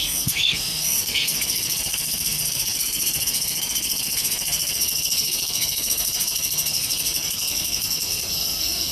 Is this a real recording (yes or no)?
no